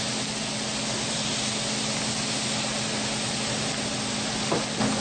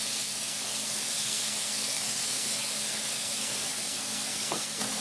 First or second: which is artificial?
second